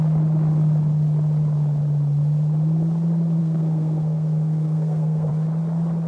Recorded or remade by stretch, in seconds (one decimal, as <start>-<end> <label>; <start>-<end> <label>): 0.0-3.4 recorded; 3.4-5.3 remade; 5.3-6.1 recorded